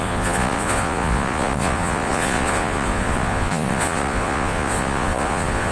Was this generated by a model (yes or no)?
yes